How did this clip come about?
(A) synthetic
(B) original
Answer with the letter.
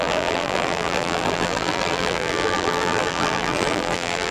A